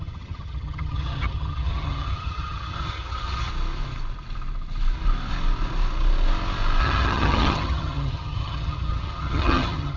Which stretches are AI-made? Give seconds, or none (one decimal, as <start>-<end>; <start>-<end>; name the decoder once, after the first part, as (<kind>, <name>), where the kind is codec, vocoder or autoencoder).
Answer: 0.0-3.5 (vocoder, HiFi-GAN); 6.8-10.0